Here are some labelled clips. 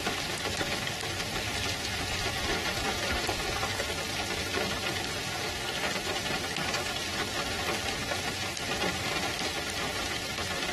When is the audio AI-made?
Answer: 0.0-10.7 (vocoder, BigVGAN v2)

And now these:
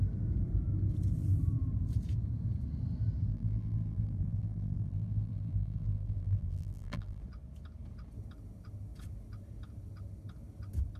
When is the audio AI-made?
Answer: 3.3-7.2 (vocoder, BigVGAN v2)

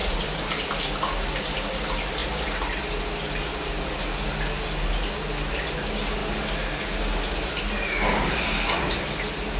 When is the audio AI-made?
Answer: 0.0-0.7 (vocoder, BigVGAN v2)

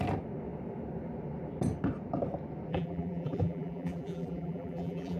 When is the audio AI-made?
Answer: 2.7-5.2 (vocoder, BigVGAN v2)

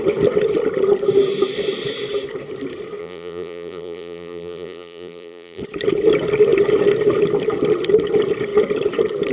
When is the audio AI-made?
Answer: 3.0-5.6 (vocoder, BigVGAN v2)